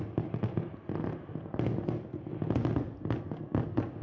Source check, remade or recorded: recorded